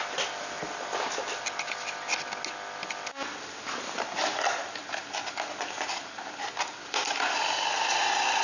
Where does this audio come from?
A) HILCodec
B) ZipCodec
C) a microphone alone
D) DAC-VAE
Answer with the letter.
C